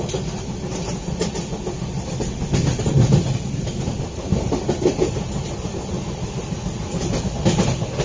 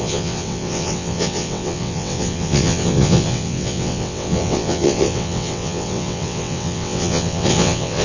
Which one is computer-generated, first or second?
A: second